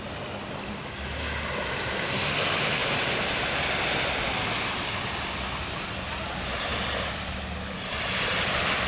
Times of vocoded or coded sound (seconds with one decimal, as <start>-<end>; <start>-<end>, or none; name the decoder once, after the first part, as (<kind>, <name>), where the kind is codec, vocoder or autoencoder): 6.7-7.4 (vocoder, BigVGAN v2)